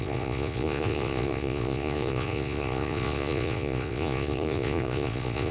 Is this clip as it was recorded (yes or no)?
no